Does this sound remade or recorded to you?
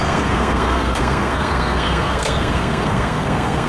remade